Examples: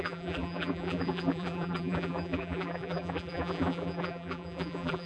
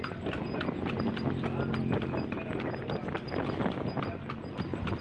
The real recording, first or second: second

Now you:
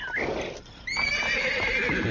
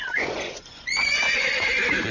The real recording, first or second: first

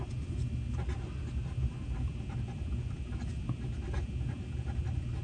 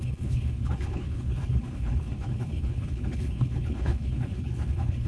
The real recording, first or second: first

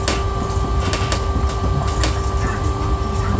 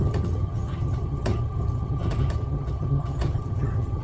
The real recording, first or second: first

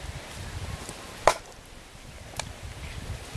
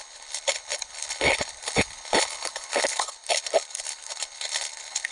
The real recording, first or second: first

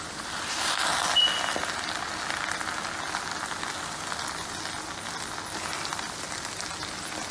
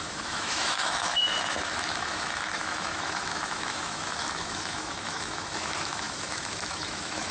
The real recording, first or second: first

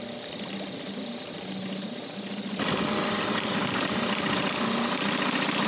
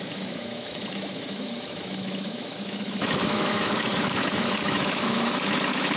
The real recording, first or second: first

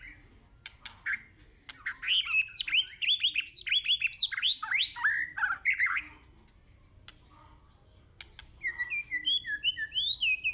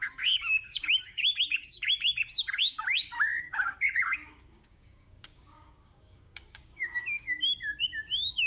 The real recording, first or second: first